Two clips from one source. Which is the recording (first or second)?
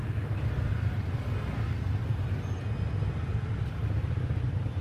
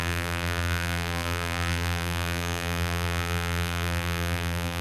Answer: first